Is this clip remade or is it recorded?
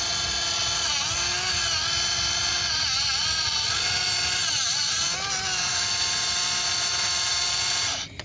recorded